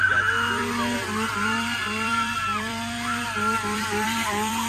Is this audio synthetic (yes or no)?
yes